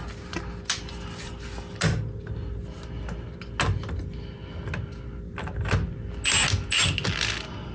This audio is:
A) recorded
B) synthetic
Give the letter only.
A